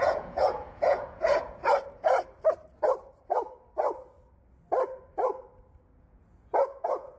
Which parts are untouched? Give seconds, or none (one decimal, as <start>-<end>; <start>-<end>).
1.6-5.8